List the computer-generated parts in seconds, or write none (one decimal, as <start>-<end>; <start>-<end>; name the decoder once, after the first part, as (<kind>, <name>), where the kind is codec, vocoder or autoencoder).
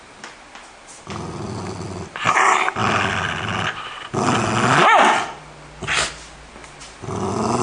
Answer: none